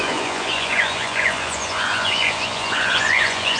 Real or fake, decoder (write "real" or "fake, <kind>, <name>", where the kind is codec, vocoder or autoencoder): fake, vocoder, Vocos